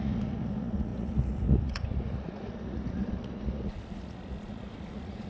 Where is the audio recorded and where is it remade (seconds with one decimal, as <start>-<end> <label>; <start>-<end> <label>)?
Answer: 0.0-5.3 remade